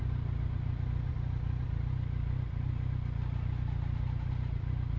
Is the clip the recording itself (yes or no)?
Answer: yes